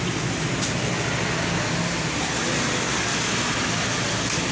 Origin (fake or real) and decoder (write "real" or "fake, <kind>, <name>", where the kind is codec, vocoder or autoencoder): real